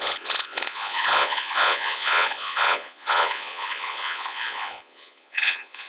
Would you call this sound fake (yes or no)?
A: yes